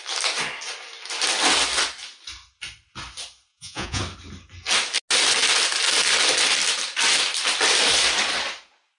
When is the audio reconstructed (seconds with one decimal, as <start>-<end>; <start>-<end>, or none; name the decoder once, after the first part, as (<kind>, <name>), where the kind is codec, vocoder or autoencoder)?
3.5-4.0 (vocoder, Vocos)

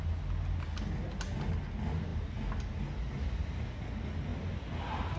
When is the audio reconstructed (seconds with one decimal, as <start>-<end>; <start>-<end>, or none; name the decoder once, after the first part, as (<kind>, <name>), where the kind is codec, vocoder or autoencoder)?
none